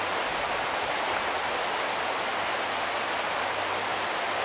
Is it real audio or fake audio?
real